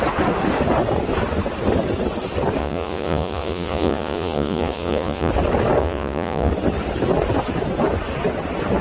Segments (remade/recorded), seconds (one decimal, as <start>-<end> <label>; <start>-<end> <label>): 0.0-2.6 recorded; 2.6-5.3 remade; 5.3-5.8 recorded; 5.8-6.5 remade; 6.5-8.8 recorded